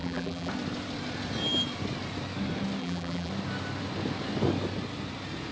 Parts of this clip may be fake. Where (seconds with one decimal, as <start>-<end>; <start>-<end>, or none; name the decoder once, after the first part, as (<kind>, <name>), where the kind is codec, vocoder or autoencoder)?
0.0-0.5 (vocoder, BigVGAN v2); 2.8-3.3